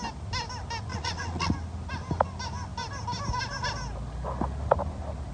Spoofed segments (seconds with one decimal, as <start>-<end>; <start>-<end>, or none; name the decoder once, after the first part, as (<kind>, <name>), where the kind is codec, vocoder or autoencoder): 0.9-1.5 (vocoder, Vocos)